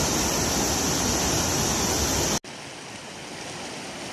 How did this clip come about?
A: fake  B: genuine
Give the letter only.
B